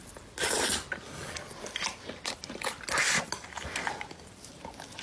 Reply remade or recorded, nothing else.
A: recorded